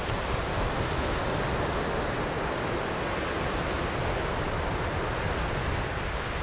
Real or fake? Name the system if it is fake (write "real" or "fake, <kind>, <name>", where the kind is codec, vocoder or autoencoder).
real